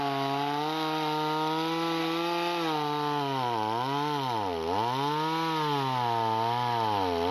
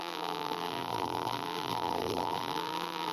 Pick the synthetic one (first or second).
second